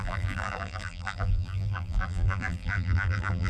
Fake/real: fake